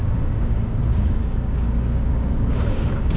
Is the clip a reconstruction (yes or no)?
yes